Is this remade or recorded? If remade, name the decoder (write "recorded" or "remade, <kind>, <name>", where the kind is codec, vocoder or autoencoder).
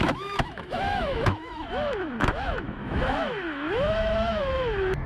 remade, autoencoder, DAC-VAE